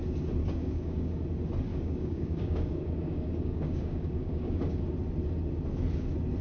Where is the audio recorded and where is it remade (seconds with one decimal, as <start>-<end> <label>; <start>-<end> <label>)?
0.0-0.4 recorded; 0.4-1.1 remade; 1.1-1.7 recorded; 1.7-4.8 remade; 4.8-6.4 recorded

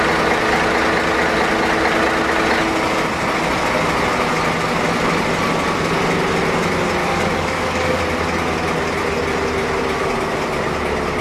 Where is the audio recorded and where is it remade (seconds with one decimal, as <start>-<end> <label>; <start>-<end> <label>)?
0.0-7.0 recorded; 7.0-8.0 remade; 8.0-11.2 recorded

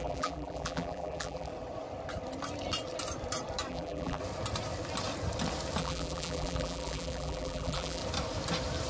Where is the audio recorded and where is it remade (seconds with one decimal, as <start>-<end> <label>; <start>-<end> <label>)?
0.0-1.5 remade; 1.5-3.7 recorded; 3.7-4.2 remade; 4.2-5.8 recorded; 5.8-8.0 remade; 8.0-8.9 recorded

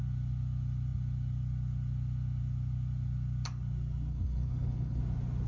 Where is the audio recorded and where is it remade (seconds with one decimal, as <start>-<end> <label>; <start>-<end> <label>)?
0.0-4.1 recorded; 4.1-5.0 remade; 5.0-5.5 recorded

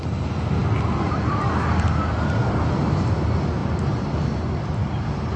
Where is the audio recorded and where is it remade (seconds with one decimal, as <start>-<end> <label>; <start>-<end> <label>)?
0.0-5.4 recorded

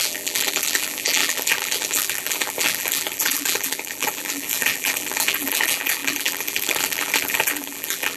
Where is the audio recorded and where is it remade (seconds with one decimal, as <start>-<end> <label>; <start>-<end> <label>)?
0.0-8.2 remade